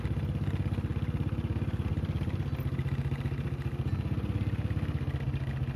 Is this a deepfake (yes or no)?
no